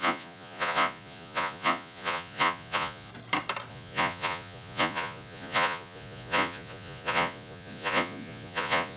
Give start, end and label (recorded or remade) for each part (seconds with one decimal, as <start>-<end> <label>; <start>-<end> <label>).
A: 0.0-3.1 remade; 3.1-3.7 recorded; 3.7-9.0 remade